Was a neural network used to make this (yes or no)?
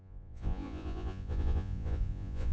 yes